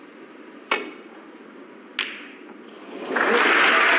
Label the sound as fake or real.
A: real